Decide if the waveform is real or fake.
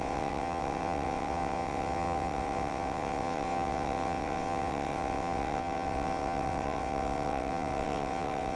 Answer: fake